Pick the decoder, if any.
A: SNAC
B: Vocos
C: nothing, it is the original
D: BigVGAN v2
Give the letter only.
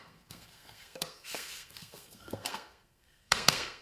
A